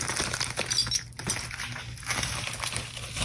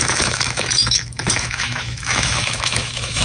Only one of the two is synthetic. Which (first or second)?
second